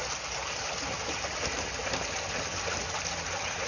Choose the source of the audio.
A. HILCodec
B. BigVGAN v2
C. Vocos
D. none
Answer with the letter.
D